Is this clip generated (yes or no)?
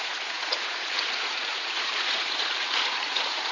yes